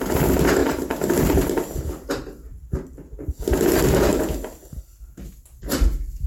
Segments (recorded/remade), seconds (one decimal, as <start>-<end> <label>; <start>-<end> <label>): 0.0-0.6 recorded; 0.6-1.9 remade; 1.9-6.3 recorded